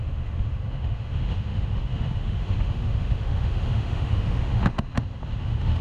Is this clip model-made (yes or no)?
yes